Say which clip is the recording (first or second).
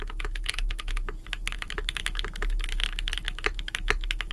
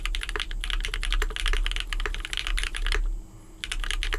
second